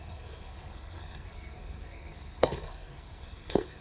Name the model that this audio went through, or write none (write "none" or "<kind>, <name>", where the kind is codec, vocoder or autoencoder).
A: codec, SNAC